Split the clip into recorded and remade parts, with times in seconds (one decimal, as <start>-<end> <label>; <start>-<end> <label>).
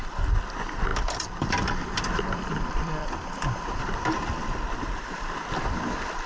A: 0.0-0.9 recorded; 0.9-4.7 remade; 4.7-6.3 recorded